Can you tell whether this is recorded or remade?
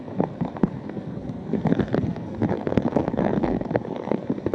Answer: remade